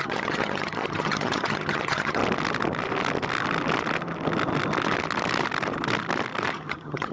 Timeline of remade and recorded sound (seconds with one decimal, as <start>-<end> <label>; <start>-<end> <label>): 0.0-2.2 remade; 2.2-6.5 recorded; 6.5-7.1 remade